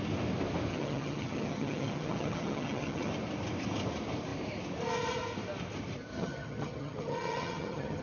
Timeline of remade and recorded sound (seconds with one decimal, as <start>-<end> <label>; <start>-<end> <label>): 0.0-0.7 recorded; 0.7-3.1 remade; 3.1-6.1 recorded; 6.1-8.0 remade